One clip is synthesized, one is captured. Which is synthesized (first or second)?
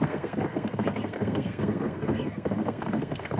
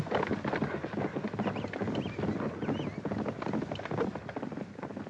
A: first